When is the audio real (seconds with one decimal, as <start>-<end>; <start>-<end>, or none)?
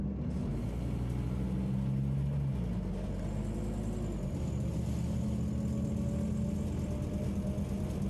0.0-8.1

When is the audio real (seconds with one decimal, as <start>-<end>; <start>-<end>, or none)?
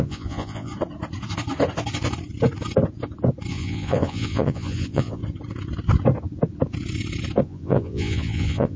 0.7-3.5; 5.2-7.4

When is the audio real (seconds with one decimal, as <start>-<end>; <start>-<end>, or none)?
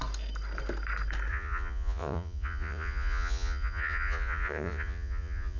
0.0-1.3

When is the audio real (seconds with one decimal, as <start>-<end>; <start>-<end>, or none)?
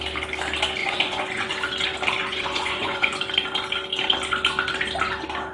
0.0-0.8; 1.5-2.2; 3.2-5.5